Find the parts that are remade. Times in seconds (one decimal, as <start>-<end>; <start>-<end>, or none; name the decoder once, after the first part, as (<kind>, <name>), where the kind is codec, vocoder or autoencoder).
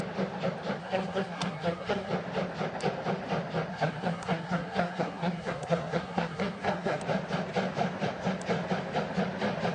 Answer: 0.8-2.1 (codec, SNAC); 3.7-7.0